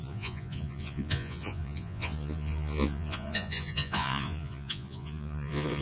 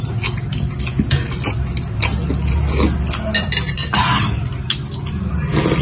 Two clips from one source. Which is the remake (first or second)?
first